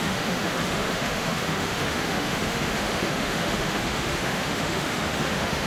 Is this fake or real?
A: fake